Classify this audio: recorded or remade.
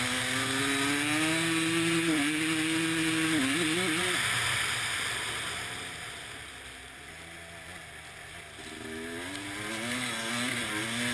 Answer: recorded